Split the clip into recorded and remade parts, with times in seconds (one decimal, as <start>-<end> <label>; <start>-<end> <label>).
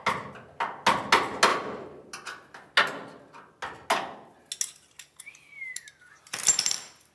0.0-7.1 recorded